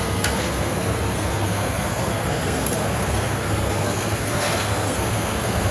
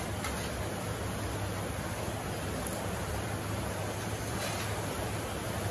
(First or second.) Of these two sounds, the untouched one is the second